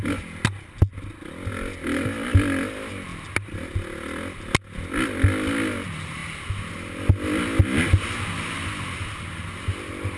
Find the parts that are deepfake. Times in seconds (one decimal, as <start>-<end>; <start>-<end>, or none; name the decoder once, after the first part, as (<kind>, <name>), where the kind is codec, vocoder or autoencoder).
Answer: none